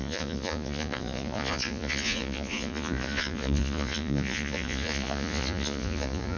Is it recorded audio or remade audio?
remade